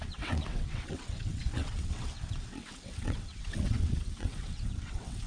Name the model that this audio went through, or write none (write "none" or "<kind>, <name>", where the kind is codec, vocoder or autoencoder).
vocoder, WaveNeXt